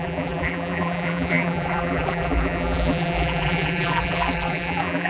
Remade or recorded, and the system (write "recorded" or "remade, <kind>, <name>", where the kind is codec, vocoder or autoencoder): remade, vocoder, BigVGAN v2